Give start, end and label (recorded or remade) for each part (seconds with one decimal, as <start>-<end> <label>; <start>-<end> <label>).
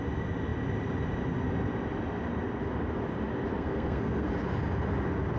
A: 0.0-3.5 recorded; 3.5-4.3 remade; 4.3-5.4 recorded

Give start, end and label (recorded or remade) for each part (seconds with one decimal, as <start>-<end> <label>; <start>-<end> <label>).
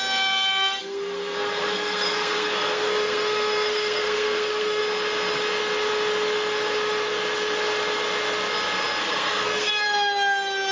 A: 0.0-0.8 recorded; 0.8-4.8 remade; 4.8-9.0 recorded; 9.0-9.7 remade; 9.7-10.7 recorded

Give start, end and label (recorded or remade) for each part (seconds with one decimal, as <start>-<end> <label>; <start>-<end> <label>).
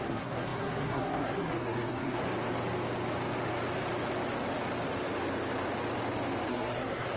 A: 0.0-2.2 remade; 2.2-6.5 recorded; 6.5-7.2 remade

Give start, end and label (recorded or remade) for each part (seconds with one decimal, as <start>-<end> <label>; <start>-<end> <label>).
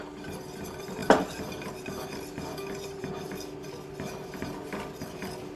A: 0.0-5.6 recorded